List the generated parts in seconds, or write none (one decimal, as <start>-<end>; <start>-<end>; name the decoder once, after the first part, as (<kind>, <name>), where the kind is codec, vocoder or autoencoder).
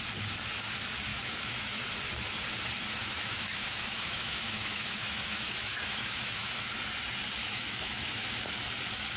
1.1-1.8 (autoencoder, DAC-VAE); 3.0-6.7; 7.4-8.4